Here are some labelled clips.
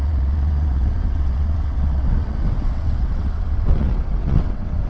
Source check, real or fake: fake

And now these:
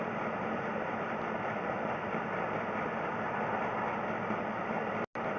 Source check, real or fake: real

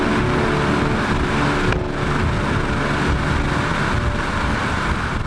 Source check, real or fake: real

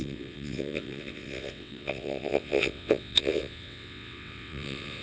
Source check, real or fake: fake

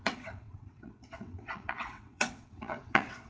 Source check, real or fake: fake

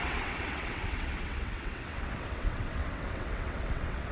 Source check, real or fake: fake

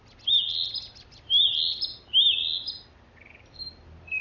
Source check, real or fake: real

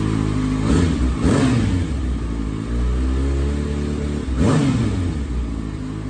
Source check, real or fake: real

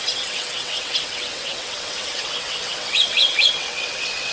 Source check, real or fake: fake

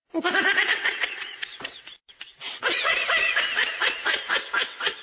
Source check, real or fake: fake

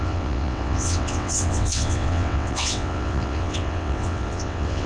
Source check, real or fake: fake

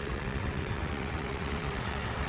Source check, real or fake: fake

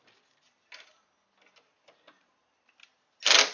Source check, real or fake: real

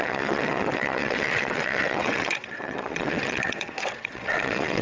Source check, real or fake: fake